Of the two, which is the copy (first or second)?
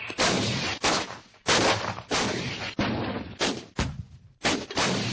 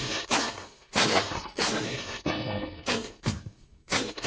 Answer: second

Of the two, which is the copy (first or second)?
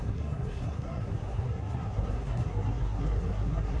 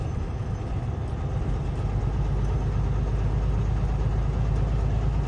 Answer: first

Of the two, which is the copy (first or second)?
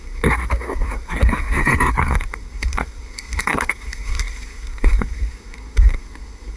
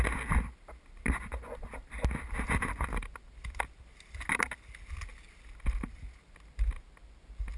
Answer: first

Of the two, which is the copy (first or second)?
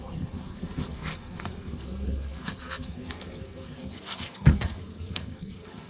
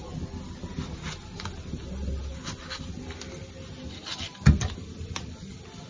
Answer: first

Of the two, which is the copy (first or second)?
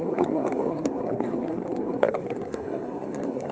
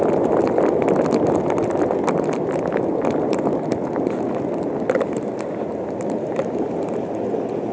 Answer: first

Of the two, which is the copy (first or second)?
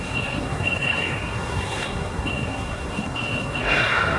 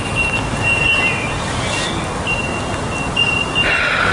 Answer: first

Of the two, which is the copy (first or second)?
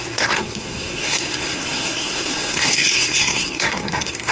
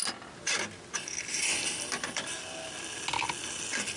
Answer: first